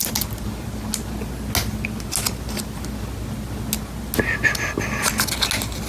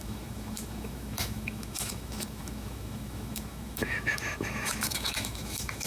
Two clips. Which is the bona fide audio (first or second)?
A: first